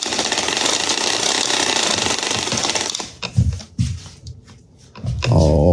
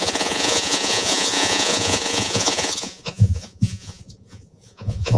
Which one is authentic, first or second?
first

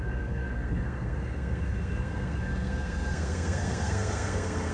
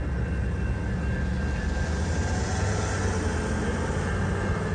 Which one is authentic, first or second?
second